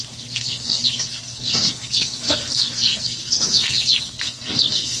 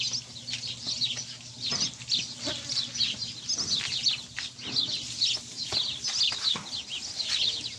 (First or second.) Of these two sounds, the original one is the second